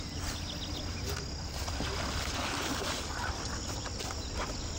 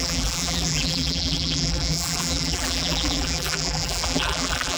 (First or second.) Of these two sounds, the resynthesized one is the second